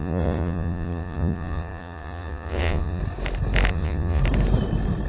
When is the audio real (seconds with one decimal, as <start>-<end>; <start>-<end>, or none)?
3.0-3.7; 4.2-5.1